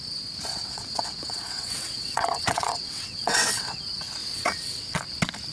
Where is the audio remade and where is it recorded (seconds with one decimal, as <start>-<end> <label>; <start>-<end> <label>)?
0.0-0.5 recorded; 0.5-3.8 remade; 3.8-4.2 recorded; 4.2-5.0 remade; 5.0-5.5 recorded